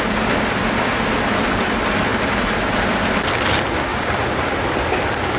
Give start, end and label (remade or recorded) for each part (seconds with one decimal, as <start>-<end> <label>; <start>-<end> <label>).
0.0-3.9 recorded; 3.9-4.5 remade; 4.5-5.4 recorded